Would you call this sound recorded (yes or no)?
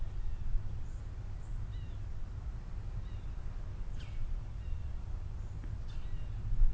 yes